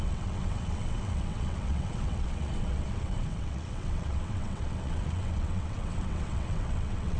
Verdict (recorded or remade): remade